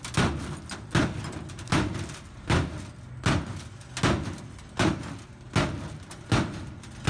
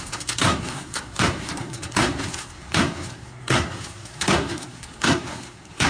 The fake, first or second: second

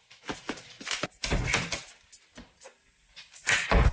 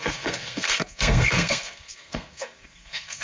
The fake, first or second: second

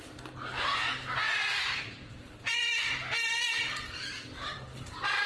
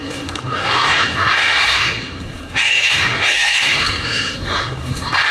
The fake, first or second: second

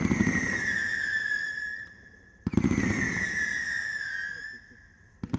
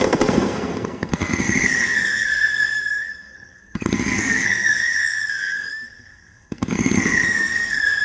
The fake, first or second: second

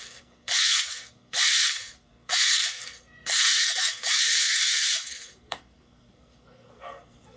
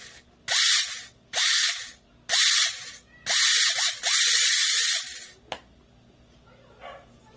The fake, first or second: first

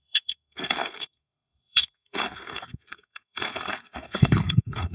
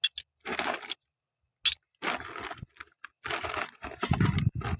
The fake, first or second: first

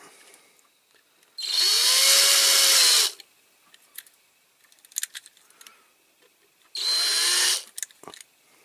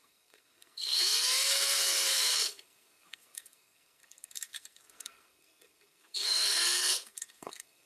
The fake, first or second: second